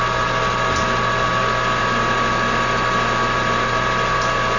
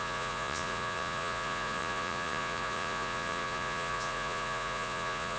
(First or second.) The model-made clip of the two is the second